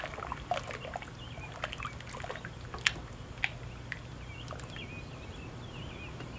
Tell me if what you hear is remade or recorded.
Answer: recorded